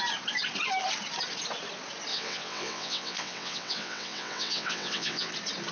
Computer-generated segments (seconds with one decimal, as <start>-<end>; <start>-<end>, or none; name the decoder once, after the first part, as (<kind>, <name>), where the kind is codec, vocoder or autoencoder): 2.1-5.3 (vocoder, WaveNeXt)